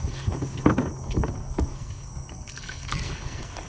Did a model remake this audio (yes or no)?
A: yes